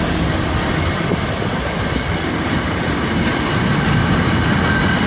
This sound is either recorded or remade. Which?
recorded